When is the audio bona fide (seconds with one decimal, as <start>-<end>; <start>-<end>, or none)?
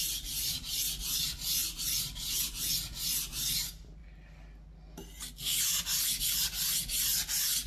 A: 0.0-7.7